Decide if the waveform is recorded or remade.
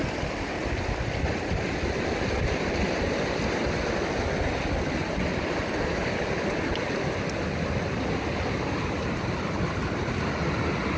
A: recorded